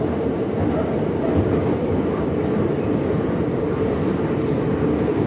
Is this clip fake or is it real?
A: real